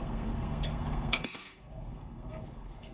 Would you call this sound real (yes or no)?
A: no